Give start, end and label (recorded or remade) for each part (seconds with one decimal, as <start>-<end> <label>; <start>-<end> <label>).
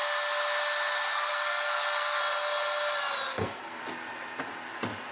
0.0-1.3 recorded; 1.3-2.2 remade; 2.2-3.3 recorded; 3.3-3.8 remade; 3.8-5.1 recorded